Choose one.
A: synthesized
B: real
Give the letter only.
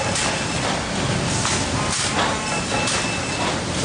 B